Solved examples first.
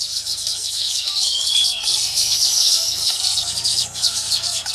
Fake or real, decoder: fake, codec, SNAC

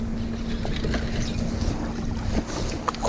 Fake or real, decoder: real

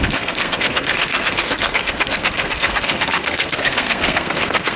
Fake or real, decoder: fake, codec, SNAC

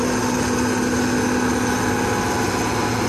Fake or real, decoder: real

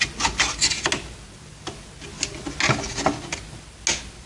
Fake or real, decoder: real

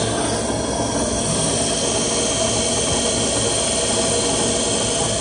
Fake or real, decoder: real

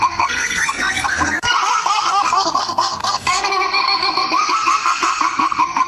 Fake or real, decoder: fake, codec, SNAC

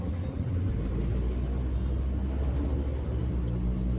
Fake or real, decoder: real